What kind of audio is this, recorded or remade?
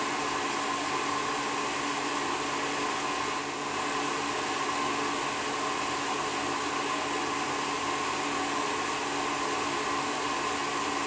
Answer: recorded